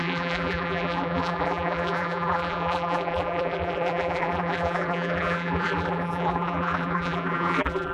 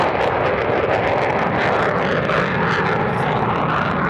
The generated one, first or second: first